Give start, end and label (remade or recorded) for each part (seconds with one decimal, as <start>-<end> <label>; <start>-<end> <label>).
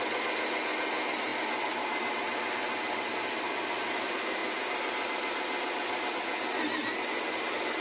0.0-7.8 recorded